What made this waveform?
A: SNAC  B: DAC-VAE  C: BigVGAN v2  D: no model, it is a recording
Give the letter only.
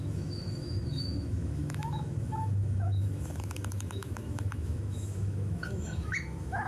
B